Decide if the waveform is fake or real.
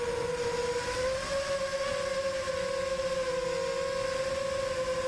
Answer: real